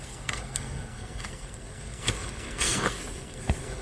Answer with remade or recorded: remade